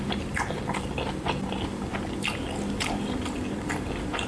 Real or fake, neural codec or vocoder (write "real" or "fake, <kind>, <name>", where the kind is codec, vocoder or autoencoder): real